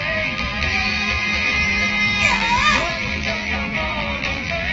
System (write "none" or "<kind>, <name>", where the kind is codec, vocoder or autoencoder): vocoder, BigVGAN v2